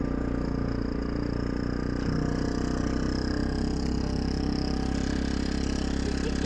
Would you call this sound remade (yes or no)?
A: no